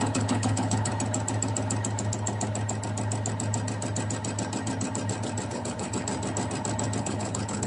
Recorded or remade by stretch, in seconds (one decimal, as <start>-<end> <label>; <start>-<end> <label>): 0.0-0.9 remade; 0.9-5.5 recorded; 5.5-6.1 remade; 6.1-7.0 recorded; 7.0-7.7 remade